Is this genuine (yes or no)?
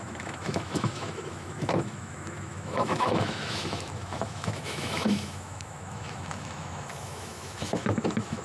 no